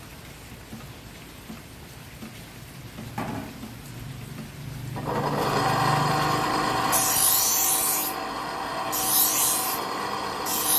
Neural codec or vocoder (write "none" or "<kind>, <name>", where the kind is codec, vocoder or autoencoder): none